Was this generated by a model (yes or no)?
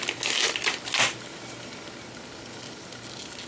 no